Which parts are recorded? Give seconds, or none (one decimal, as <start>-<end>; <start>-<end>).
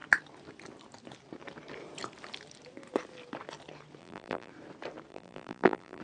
0.0-4.0; 4.5-5.1